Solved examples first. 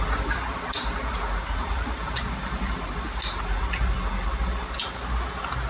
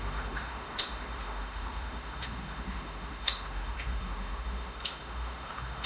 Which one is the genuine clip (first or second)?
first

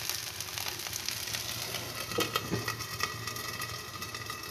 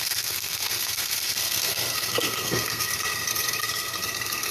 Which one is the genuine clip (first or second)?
first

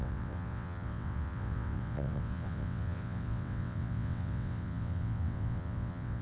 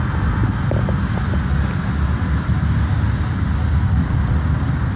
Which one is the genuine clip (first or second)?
second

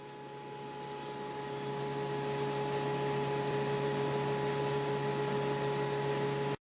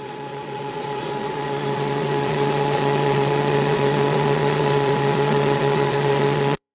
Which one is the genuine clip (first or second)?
first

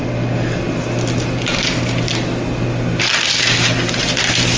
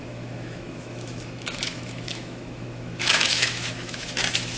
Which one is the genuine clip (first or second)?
first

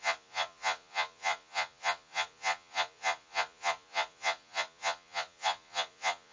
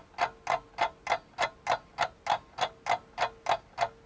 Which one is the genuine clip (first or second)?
second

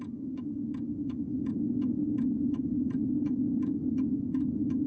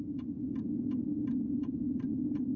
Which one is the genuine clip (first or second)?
second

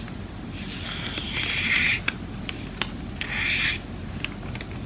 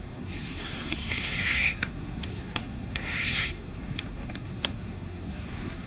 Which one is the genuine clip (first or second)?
first